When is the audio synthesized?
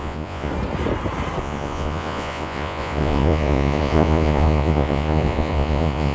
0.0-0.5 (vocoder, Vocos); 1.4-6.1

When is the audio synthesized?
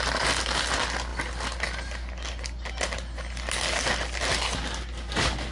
none